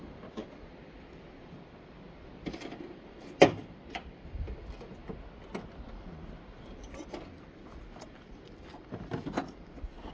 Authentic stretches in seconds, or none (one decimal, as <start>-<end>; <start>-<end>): 5.0-5.9

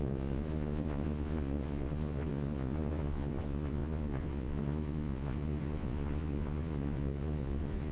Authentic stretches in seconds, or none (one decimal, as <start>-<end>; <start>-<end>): none